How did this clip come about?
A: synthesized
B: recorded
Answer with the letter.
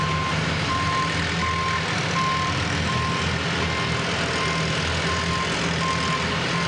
B